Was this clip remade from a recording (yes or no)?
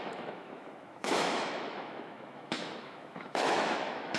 yes